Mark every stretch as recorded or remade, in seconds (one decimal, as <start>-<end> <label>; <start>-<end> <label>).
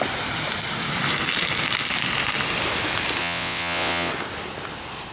0.0-3.2 recorded; 3.2-4.1 remade; 4.1-5.1 recorded